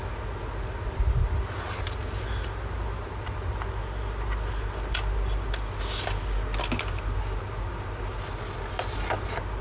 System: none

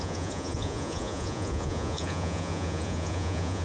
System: vocoder, Vocos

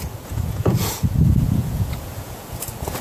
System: vocoder, Vocos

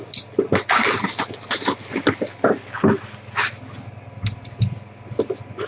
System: none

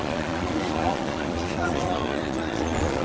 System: vocoder, Vocos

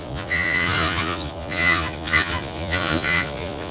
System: vocoder, Vocos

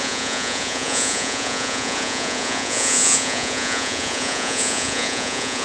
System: vocoder, Vocos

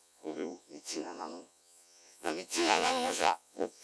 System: vocoder, Vocos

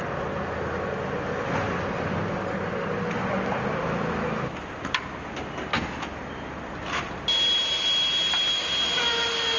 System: none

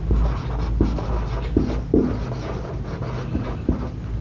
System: none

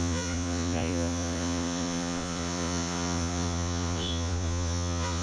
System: vocoder, Vocos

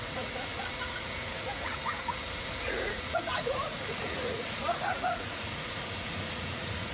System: vocoder, Vocos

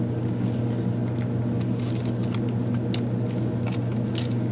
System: none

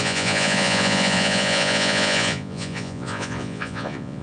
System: vocoder, Vocos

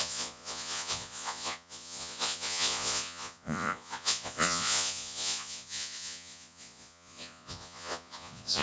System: vocoder, Vocos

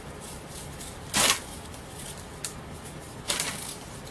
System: none